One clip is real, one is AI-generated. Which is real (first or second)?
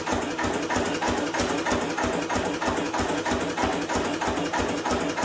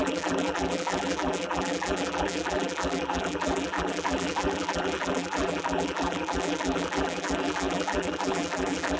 first